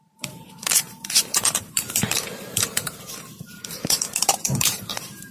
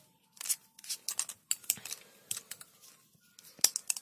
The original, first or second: second